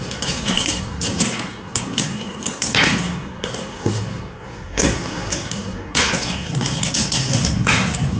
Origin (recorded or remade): remade